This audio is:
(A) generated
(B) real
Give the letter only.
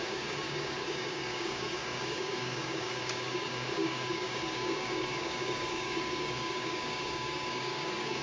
A